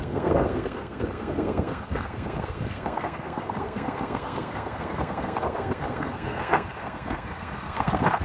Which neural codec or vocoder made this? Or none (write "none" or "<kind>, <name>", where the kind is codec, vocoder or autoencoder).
codec, SNAC